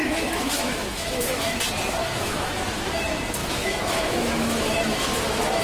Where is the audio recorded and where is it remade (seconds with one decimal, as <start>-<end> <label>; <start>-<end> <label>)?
0.0-1.6 remade; 1.6-2.0 recorded; 2.0-2.6 remade; 2.6-3.4 recorded; 3.4-5.6 remade